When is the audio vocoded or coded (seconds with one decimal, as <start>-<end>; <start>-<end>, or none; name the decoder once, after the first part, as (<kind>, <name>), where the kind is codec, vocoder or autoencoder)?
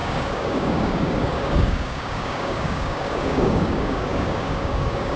0.0-5.2 (codec, DAC)